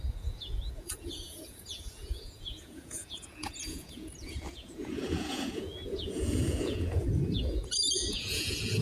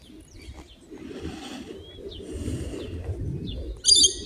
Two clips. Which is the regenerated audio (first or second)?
first